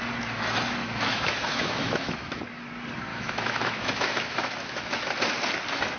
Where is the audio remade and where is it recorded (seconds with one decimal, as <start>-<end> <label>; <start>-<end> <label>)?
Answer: 0.0-0.8 recorded; 0.8-2.4 remade; 2.4-3.1 recorded; 3.1-5.1 remade; 5.1-6.0 recorded